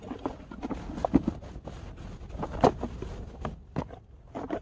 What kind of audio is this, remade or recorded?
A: recorded